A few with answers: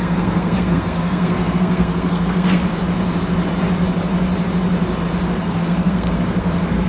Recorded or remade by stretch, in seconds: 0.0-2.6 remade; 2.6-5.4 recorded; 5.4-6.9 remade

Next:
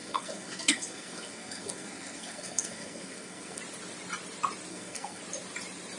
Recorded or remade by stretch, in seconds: 0.0-3.6 remade; 3.6-4.7 recorded; 4.7-5.2 remade; 5.2-6.0 recorded

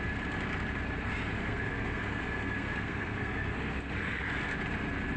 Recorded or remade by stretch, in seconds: 0.0-1.4 recorded; 1.4-4.3 remade; 4.3-5.2 recorded

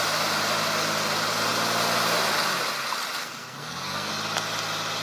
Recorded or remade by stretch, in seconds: 0.0-3.2 recorded; 3.2-4.1 remade; 4.1-5.0 recorded

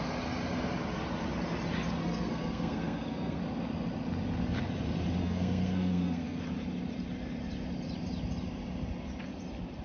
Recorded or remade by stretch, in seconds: 0.0-2.0 recorded; 2.0-3.4 remade; 3.4-5.2 recorded; 5.2-6.4 remade; 6.4-9.8 recorded

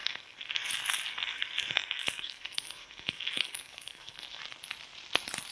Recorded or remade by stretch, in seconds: 0.0-0.7 remade; 0.7-1.1 recorded; 1.1-4.4 remade; 4.4-5.5 recorded